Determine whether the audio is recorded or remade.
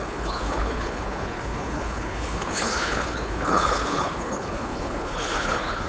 remade